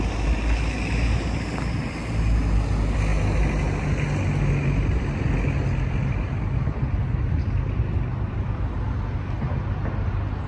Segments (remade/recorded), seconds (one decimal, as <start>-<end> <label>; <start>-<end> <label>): 0.0-10.5 recorded